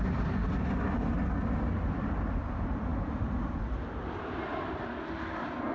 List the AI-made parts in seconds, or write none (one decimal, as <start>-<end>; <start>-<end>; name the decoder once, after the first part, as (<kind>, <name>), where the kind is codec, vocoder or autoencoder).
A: none